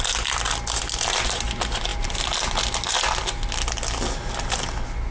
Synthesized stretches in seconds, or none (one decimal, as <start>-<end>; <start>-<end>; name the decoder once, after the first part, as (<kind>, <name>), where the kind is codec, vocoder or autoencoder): none